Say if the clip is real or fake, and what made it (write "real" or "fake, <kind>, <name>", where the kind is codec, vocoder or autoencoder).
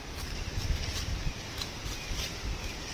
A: fake, vocoder, BigVGAN v2